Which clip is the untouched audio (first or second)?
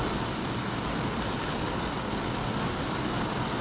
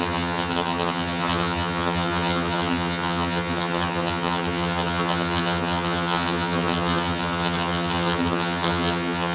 first